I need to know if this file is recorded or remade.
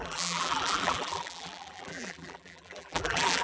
remade